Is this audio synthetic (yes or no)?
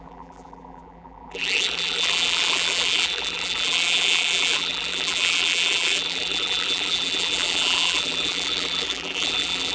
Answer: yes